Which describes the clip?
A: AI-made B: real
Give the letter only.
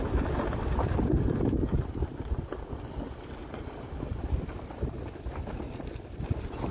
B